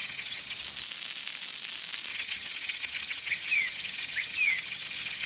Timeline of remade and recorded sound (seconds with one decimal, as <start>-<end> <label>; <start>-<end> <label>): 0.0-0.6 remade; 0.6-2.1 recorded; 2.1-5.3 remade